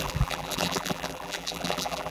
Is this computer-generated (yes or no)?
yes